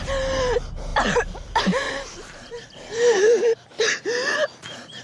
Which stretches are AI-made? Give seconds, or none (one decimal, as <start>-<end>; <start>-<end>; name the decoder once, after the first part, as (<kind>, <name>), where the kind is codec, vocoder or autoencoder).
0.9-3.9 (vocoder, BigVGAN v2)